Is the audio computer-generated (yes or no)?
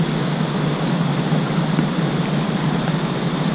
no